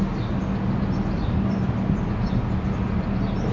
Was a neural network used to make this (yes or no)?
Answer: no